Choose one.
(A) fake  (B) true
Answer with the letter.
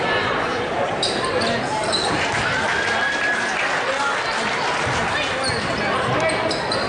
B